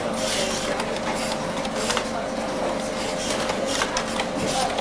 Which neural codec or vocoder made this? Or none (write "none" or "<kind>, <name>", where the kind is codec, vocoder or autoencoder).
none